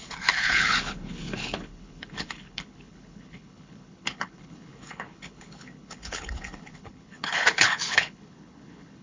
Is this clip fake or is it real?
fake